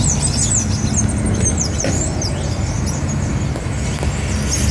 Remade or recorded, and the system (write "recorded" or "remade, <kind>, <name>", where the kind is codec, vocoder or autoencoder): recorded